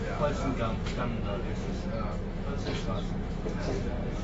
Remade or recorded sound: remade